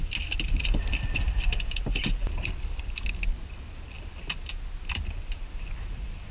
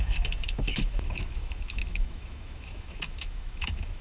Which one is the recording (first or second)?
first